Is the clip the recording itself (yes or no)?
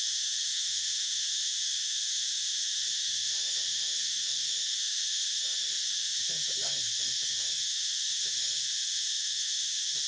no